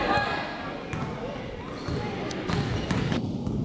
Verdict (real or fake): real